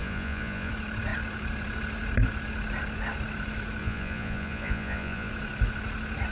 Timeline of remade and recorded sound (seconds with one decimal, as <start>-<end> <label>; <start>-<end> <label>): 0.0-0.7 remade; 0.7-3.8 recorded; 3.8-5.3 remade; 5.3-6.3 recorded